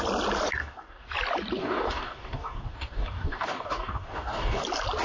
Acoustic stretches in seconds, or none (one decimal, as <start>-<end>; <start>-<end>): 0.0-0.6; 1.1-1.6; 4.6-5.0